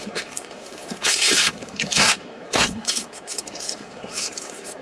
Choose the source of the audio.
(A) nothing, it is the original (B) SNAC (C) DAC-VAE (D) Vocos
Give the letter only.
B